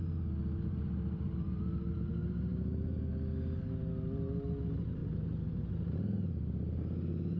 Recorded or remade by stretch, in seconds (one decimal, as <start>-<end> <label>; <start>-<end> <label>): 0.0-7.4 recorded